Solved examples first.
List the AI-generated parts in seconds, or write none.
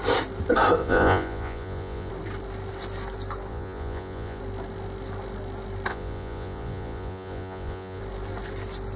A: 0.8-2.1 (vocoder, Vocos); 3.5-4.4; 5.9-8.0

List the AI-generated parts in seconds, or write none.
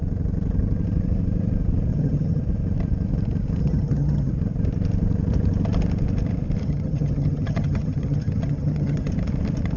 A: 1.9-2.4 (vocoder, HiFi-GAN); 3.6-4.3; 6.6-9.1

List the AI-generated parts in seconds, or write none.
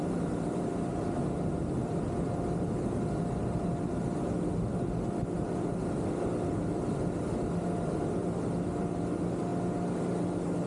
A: none